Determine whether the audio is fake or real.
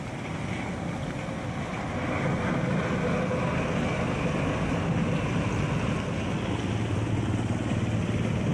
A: real